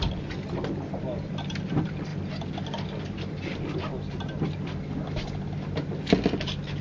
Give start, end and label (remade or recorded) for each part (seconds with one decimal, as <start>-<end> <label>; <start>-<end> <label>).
0.0-6.8 recorded